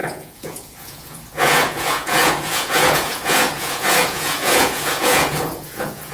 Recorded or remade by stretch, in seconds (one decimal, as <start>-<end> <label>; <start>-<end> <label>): 0.0-6.1 remade

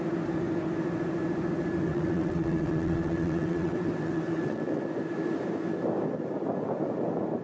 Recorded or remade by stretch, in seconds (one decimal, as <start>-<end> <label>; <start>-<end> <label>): 0.0-1.9 recorded; 1.9-4.8 remade; 4.8-7.4 recorded